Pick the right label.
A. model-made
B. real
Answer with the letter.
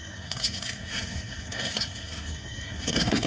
A